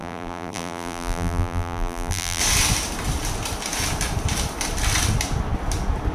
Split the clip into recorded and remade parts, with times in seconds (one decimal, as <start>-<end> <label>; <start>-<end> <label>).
0.0-2.4 remade; 2.4-6.1 recorded